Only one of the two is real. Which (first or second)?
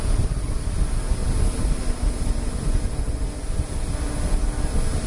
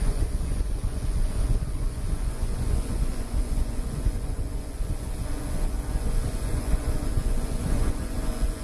first